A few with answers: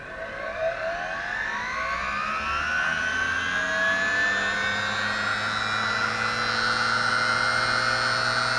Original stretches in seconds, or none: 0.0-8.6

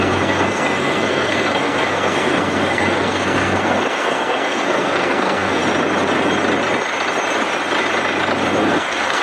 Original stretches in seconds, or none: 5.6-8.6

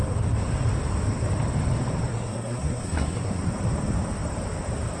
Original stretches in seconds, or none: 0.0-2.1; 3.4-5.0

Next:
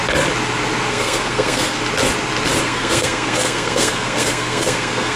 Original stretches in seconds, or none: 0.0-0.9; 1.8-2.6

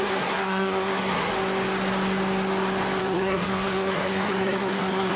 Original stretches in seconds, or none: 1.3-3.0

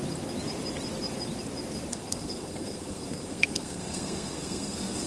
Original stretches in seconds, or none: 0.0-1.9